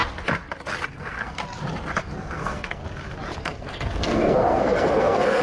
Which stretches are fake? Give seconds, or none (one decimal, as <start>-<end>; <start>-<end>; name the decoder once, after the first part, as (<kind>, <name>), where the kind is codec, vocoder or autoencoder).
0.9-1.4 (codec, SNAC); 2.0-2.8; 3.4-5.4